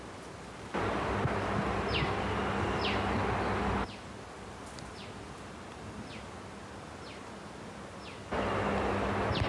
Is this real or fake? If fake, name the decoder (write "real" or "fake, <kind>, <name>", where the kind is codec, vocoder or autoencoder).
real